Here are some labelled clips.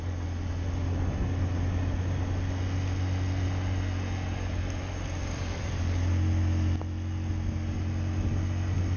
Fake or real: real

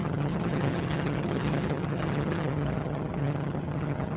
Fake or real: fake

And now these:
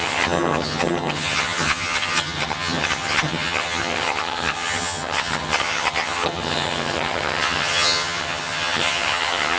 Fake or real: fake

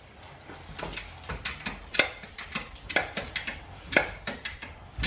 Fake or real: real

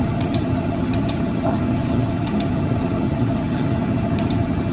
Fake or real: fake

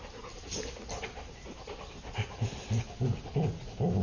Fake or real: real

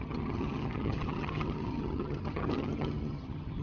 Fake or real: fake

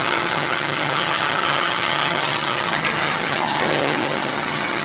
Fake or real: fake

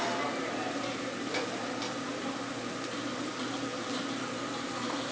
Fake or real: real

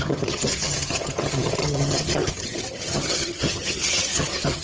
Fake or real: fake